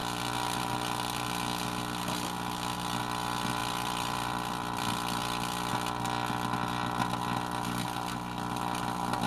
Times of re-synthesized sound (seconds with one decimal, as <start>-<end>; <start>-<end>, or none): 3.6-5.7